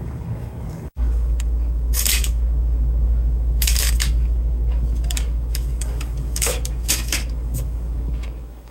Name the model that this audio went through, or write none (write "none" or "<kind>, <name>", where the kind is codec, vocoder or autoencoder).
codec, DAC